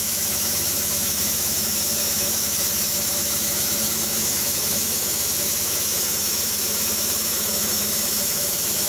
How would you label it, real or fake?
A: fake